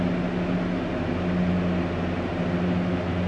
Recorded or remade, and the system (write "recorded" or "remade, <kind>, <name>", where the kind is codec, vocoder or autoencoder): recorded